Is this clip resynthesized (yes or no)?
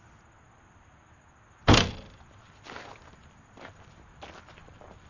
no